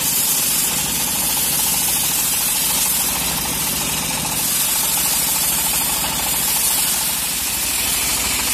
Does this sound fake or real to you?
real